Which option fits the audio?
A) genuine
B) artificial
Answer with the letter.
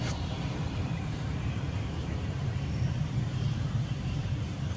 B